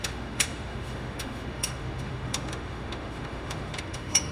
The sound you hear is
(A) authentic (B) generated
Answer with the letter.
B